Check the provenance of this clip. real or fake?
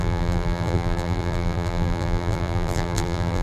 fake